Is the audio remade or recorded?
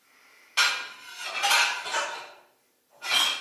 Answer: recorded